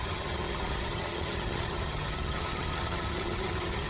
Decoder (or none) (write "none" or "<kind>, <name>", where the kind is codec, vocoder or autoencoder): vocoder, HiFi-GAN